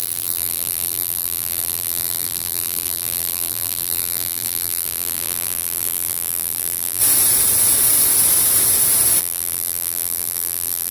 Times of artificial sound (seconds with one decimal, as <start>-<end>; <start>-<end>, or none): 0.0-7.0; 9.2-10.9

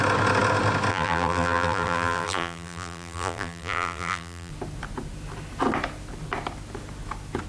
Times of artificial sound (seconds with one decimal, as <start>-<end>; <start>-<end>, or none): 0.9-4.5

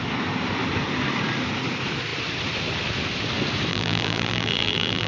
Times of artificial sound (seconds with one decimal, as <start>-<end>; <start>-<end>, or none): 3.7-5.1

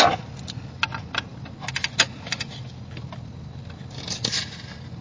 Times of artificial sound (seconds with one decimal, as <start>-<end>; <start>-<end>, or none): none

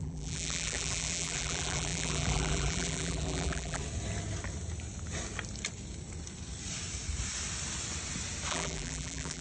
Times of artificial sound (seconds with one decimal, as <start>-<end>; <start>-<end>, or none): 0.0-3.8; 8.5-9.4

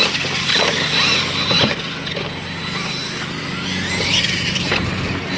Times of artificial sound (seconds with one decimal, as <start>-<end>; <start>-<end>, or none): 0.0-1.1; 4.0-5.4

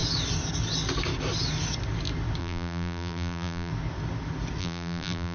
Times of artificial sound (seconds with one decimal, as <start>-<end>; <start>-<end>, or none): 2.4-3.7; 4.6-5.3

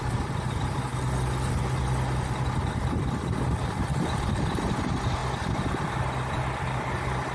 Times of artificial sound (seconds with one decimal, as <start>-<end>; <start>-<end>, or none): none